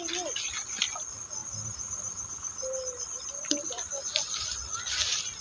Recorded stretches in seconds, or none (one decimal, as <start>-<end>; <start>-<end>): 0.0-1.4; 3.6-5.4